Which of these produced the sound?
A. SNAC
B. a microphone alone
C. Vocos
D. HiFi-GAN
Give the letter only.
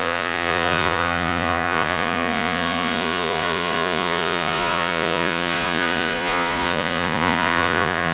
C